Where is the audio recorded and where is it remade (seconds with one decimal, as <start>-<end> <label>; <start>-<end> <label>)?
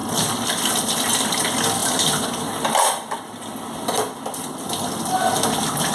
0.0-5.9 recorded